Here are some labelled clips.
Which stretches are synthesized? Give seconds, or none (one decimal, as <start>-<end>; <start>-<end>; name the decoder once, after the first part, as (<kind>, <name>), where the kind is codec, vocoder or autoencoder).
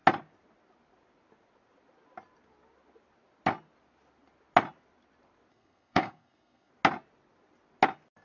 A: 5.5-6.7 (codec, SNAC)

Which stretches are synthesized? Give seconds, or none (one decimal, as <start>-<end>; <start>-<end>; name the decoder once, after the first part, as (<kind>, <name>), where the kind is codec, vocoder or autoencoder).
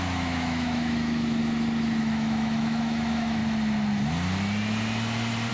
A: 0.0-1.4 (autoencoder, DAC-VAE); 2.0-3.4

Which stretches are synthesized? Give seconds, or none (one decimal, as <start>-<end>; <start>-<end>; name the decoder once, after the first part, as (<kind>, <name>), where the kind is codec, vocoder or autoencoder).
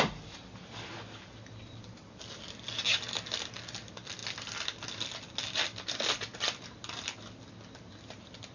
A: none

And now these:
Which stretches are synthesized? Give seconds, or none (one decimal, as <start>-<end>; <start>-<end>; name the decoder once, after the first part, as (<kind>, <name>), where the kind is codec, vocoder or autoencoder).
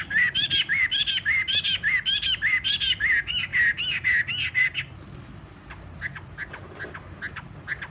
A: none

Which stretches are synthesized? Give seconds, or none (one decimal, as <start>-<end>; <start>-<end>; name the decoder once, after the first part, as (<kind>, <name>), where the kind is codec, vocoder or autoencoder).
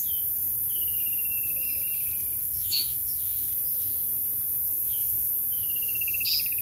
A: 2.4-3.5 (autoencoder, DAC-VAE); 4.7-5.3